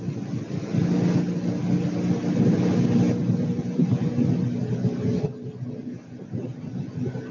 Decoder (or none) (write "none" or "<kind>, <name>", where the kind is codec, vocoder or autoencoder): none